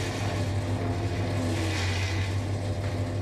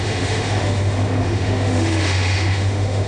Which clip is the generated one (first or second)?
second